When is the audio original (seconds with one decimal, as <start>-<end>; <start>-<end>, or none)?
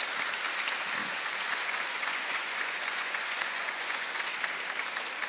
0.0-1.0; 4.2-5.3